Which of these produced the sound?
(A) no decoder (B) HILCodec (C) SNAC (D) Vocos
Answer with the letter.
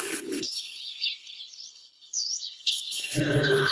B